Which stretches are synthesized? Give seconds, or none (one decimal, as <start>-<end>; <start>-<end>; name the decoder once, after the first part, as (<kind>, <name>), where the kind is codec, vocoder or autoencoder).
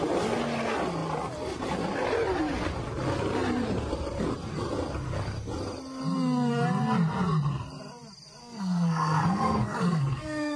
8.4-10.6 (codec, SNAC)